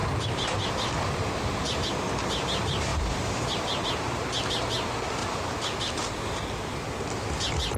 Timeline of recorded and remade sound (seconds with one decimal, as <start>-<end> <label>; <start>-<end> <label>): 0.0-1.9 remade; 1.9-2.9 recorded; 2.9-3.8 remade; 3.8-5.2 recorded; 5.2-6.2 remade; 6.2-7.8 recorded